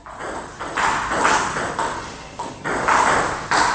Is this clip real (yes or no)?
yes